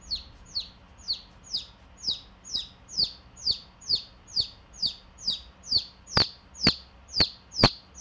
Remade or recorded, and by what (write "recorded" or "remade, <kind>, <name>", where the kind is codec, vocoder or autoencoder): recorded